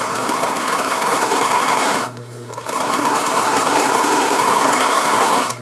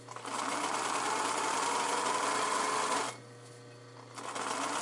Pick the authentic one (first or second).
second